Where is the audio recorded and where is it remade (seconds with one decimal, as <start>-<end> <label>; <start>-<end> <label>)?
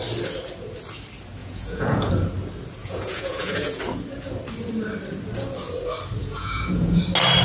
0.0-1.4 recorded; 1.4-2.1 remade; 2.1-2.8 recorded; 2.8-3.8 remade; 3.8-6.2 recorded; 6.2-7.0 remade; 7.0-7.4 recorded